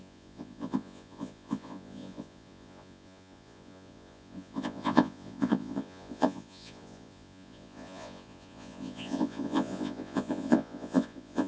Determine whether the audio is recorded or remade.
remade